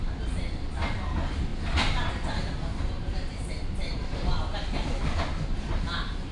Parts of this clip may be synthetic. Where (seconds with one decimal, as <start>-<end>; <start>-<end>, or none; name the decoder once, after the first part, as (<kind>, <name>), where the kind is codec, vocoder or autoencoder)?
none